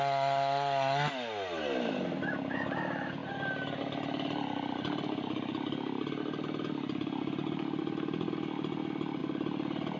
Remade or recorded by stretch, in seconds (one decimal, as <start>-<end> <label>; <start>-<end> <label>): 0.0-10.0 recorded